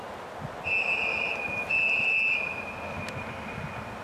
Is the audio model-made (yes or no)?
no